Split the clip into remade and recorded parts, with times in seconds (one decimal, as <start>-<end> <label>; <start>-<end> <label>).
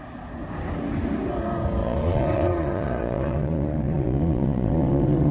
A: 0.0-1.8 recorded; 1.8-5.3 remade